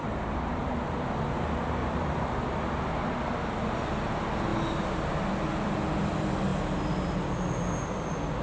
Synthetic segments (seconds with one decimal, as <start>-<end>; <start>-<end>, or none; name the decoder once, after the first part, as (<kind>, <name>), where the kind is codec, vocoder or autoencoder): 0.0-0.7 (vocoder, BigVGAN v2); 1.8-2.6